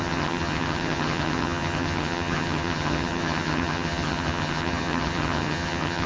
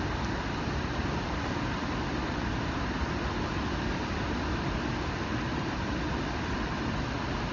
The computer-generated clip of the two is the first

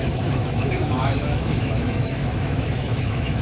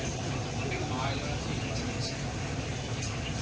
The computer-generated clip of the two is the first